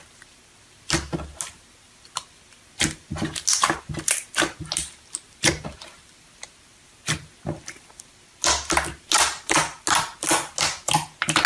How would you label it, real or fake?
real